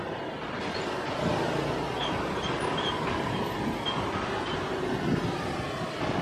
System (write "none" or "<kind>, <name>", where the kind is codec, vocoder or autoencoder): none